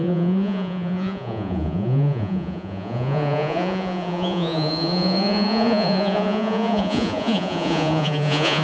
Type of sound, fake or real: fake